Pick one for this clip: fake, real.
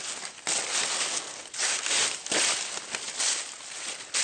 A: real